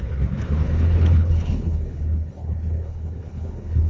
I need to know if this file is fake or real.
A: fake